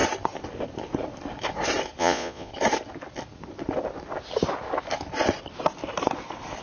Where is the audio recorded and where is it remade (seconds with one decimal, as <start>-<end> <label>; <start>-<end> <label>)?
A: 0.0-2.0 recorded; 2.0-2.5 remade; 2.5-6.6 recorded